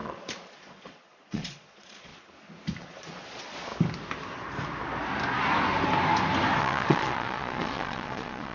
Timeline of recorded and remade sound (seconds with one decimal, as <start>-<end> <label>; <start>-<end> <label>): 0.0-2.1 remade; 2.1-2.8 recorded; 2.8-3.7 remade; 3.7-6.6 recorded; 6.6-8.5 remade